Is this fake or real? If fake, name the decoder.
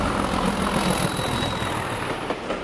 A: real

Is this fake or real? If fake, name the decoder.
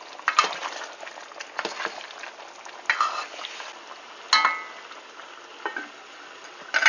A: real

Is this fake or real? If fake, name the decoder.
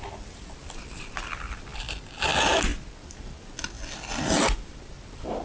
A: real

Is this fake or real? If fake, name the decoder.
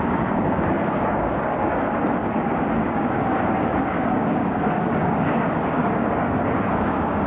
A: fake, codec, DAC